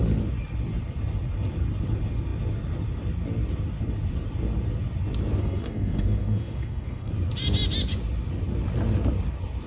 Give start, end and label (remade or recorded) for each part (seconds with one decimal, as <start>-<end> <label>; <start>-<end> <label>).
0.0-5.4 recorded; 5.4-7.1 remade; 7.1-9.7 recorded